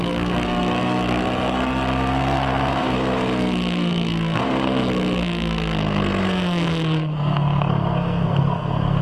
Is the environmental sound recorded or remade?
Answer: remade